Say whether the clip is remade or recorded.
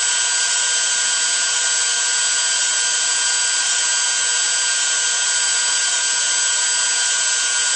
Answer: recorded